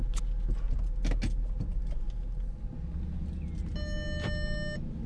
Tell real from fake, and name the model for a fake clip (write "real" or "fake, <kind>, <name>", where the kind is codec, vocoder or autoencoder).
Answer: real